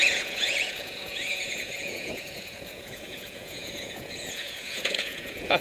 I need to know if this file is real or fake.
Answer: fake